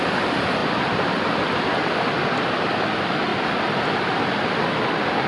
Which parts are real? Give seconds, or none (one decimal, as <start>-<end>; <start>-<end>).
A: 0.0-5.3